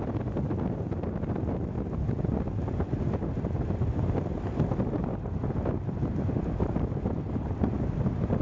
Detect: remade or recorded recorded